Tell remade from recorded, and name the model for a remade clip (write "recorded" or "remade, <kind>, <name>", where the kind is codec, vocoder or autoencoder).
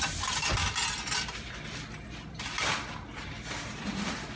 recorded